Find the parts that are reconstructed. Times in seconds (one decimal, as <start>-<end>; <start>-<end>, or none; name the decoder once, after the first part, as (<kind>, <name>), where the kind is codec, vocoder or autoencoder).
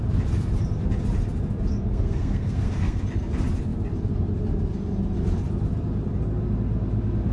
1.9-3.0 (codec, SNAC)